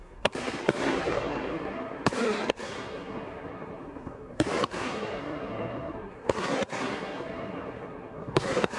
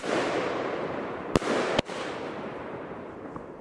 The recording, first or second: second